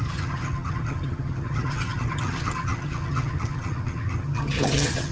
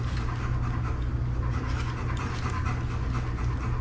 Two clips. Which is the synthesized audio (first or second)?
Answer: first